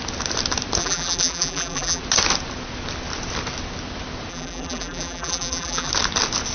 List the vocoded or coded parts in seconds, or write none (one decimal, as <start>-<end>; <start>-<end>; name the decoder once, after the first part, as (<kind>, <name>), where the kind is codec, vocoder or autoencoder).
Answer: 0.8-2.0 (vocoder, BigVGAN v2); 4.3-5.9